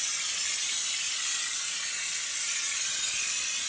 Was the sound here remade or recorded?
recorded